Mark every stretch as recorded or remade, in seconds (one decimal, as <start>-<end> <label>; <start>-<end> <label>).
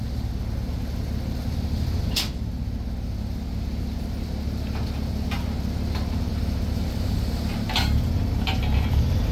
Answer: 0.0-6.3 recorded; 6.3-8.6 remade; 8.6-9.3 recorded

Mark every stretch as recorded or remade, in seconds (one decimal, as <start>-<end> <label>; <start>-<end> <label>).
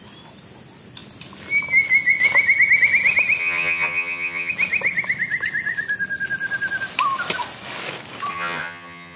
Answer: 0.0-3.4 recorded; 3.4-4.5 remade; 4.5-8.3 recorded; 8.3-9.2 remade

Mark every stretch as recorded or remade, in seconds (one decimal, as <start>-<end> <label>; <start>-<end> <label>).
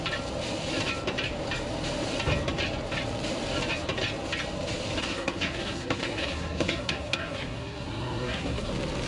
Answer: 0.0-5.0 recorded; 5.0-8.7 remade; 8.7-9.1 recorded